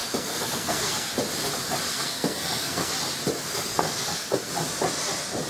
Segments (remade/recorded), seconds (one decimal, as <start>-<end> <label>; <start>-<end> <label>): 0.0-1.1 remade; 1.1-1.9 recorded; 1.9-2.9 remade; 2.9-3.4 recorded; 3.4-4.5 remade; 4.5-5.5 recorded